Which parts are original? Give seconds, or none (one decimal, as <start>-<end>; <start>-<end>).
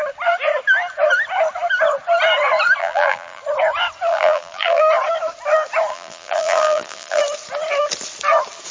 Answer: 0.0-2.8; 3.4-4.1; 4.8-5.9; 7.2-8.7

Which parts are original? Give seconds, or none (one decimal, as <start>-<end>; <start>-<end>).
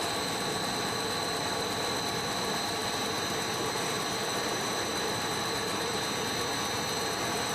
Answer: 0.0-4.9; 6.0-7.5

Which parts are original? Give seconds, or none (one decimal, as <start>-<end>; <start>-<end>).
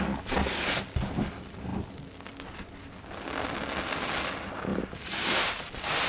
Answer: 0.0-4.7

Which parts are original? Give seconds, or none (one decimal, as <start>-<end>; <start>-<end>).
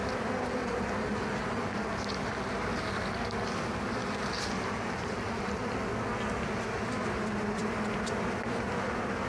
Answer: 0.0-0.6; 1.9-4.0; 5.9-9.3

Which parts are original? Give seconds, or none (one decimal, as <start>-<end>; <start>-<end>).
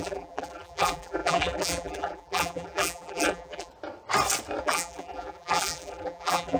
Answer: 3.7-4.6